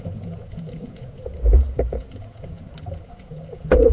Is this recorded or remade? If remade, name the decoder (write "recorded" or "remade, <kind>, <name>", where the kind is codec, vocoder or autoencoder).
remade, vocoder, Vocos